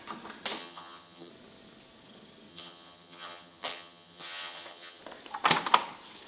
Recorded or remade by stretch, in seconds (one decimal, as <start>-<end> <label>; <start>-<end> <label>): 0.0-0.6 recorded; 0.6-1.3 remade; 1.3-2.5 recorded; 2.5-5.0 remade; 5.0-6.3 recorded